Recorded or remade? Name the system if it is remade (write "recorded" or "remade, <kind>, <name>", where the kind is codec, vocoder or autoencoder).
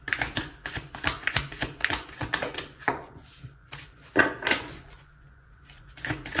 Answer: remade, vocoder, Vocos